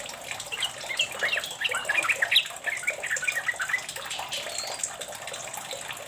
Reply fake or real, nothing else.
real